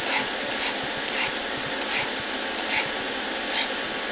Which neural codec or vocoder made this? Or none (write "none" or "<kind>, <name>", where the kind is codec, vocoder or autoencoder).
vocoder, BigVGAN v2